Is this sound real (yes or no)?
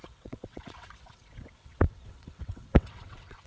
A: no